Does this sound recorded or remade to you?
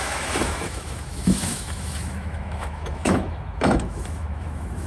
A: remade